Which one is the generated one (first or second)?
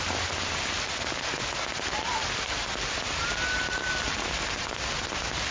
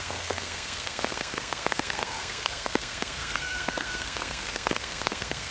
second